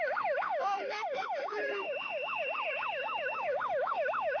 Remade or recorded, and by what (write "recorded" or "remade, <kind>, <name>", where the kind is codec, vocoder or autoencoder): remade, autoencoder, DAC-VAE